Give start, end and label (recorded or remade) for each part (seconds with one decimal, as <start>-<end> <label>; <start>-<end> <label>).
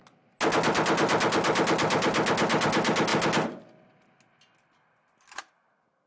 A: 0.0-6.1 recorded